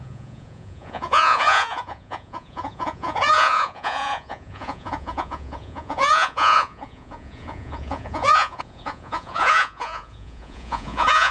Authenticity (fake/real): fake